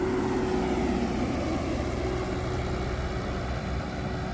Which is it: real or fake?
real